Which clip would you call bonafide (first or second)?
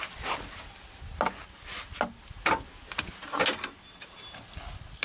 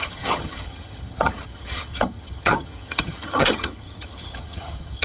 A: first